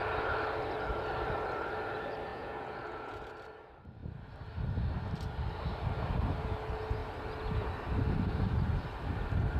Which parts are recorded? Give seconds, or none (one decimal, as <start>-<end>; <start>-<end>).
0.0-2.3; 3.2-9.6